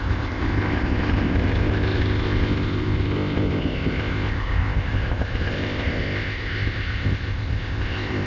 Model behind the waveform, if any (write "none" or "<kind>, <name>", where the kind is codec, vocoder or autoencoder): codec, ZipCodec